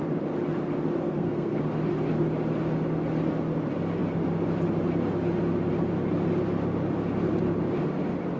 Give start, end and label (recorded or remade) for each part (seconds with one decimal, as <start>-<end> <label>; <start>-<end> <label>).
0.0-1.0 recorded; 1.0-1.6 remade; 1.6-8.4 recorded